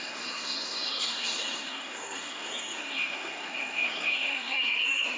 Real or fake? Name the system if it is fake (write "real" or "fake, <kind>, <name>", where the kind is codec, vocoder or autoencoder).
fake, codec, SNAC